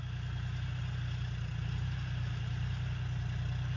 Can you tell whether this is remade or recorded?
recorded